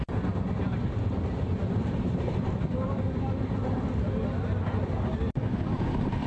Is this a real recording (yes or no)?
yes